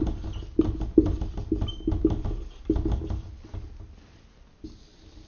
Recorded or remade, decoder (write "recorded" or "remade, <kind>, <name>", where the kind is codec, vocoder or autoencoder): recorded